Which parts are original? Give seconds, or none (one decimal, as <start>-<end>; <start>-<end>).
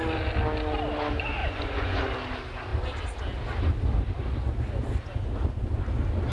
0.0-1.4; 2.0-6.3